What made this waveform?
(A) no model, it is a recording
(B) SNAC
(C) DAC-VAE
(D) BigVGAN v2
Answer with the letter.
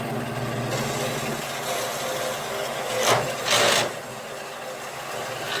A